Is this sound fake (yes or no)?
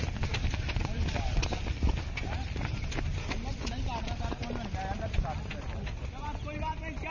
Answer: no